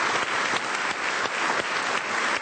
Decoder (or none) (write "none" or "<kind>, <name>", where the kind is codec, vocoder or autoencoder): none